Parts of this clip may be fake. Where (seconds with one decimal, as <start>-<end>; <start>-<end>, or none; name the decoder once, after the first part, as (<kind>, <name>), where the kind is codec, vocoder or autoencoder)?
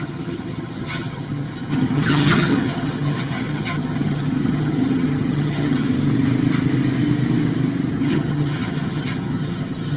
0.0-5.9 (vocoder, HiFi-GAN); 7.9-10.0